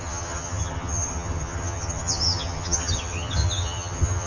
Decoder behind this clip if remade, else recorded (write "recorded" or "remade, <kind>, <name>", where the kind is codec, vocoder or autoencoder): remade, vocoder, HiFi-GAN